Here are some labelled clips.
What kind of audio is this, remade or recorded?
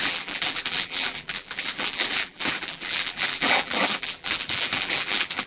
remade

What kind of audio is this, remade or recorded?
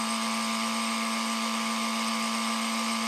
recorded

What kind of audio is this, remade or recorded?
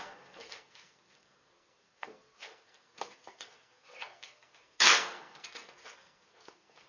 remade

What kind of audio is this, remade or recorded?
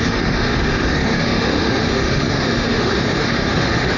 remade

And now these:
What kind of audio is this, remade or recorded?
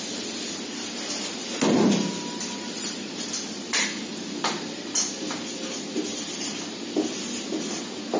recorded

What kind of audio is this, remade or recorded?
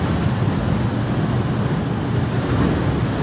recorded